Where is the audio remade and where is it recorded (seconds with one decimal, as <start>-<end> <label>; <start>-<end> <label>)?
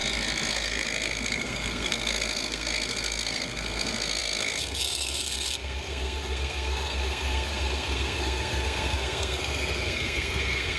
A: 0.0-0.5 recorded; 0.5-10.8 remade